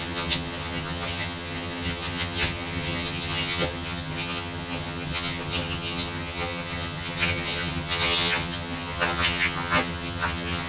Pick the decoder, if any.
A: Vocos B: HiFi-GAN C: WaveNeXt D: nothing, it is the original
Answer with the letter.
B